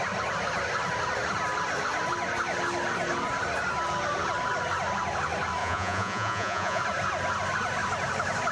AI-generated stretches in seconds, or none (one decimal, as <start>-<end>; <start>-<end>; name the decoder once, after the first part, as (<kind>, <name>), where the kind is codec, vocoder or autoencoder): 5.6-6.8 (vocoder, Vocos)